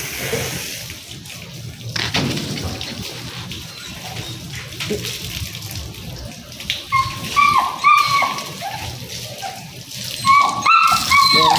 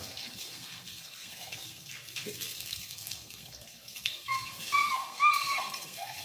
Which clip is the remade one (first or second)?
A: second